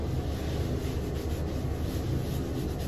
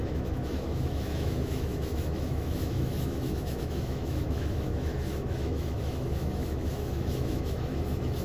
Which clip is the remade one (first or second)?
second